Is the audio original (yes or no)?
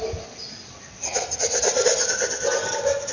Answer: yes